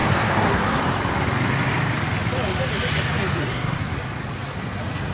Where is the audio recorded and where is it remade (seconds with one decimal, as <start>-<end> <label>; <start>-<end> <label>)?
0.0-0.8 remade; 0.8-3.4 recorded; 3.4-3.9 remade; 3.9-5.1 recorded